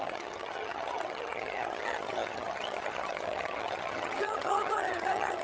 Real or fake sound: fake